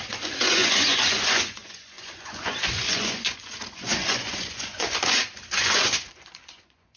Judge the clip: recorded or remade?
remade